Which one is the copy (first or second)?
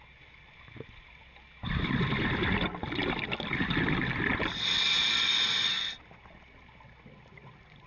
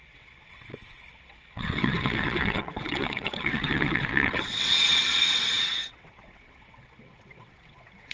second